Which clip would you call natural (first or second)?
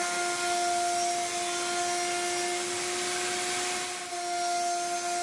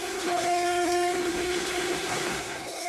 first